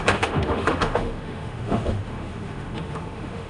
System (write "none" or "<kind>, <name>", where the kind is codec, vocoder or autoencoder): autoencoder, DAC-VAE